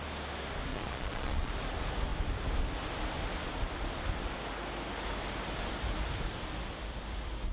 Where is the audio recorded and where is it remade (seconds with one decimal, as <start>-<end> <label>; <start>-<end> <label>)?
0.0-0.7 recorded; 0.7-1.5 remade; 1.5-7.5 recorded